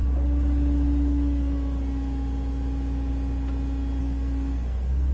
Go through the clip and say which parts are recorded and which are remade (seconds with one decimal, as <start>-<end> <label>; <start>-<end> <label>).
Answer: 0.0-4.0 recorded; 4.0-5.1 remade